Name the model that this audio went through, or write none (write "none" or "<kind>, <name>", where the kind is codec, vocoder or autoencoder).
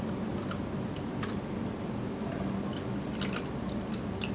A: none